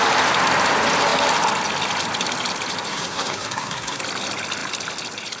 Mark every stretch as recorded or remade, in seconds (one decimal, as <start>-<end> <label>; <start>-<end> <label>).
0.0-2.9 recorded; 2.9-4.0 remade; 4.0-5.4 recorded